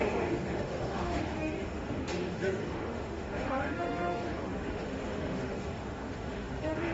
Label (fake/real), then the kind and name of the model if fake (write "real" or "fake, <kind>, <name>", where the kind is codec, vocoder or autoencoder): fake, autoencoder, DAC-VAE